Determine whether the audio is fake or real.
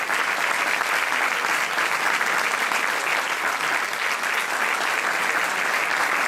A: real